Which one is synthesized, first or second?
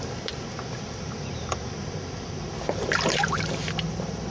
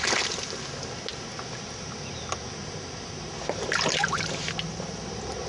first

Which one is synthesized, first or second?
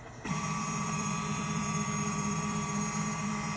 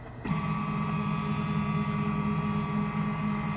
first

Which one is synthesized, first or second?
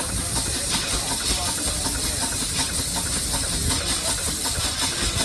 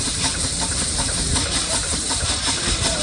second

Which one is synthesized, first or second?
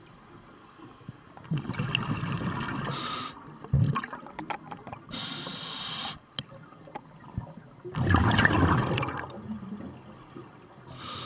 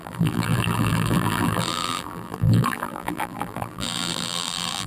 second